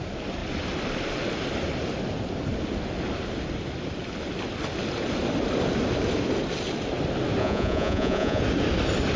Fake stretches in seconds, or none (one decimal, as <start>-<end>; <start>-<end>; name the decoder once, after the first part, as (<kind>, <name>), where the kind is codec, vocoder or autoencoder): 7.4-8.4 (vocoder, Vocos)